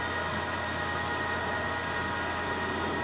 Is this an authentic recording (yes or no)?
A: yes